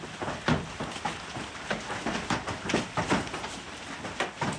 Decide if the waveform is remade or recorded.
recorded